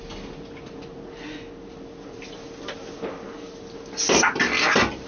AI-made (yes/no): no